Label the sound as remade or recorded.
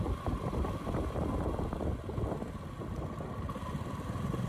recorded